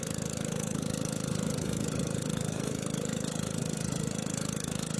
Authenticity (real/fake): fake